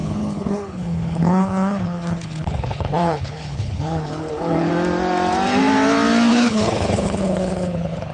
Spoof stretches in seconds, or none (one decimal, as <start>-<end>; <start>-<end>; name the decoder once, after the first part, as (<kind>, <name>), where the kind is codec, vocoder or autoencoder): 0.0-4.7 (codec, HILCodec); 6.3-8.1